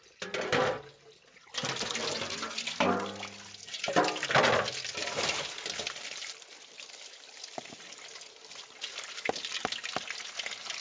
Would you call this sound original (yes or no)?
yes